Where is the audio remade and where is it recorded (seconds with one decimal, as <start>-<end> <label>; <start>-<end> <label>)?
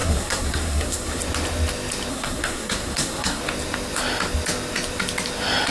0.0-1.2 remade; 1.2-2.1 recorded; 2.1-3.4 remade; 3.4-5.7 recorded